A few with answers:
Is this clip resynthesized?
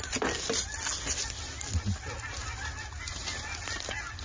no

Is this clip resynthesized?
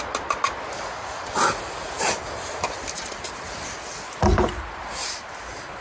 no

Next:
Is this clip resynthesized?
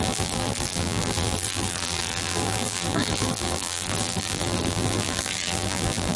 yes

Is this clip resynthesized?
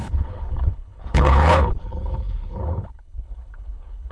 yes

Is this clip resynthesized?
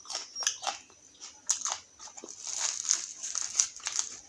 no